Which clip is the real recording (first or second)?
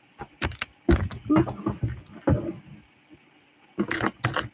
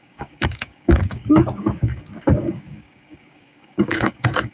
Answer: first